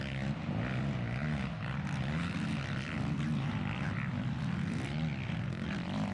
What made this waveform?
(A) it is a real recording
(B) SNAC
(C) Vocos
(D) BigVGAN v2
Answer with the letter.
A